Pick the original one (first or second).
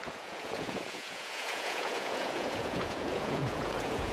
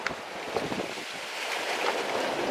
second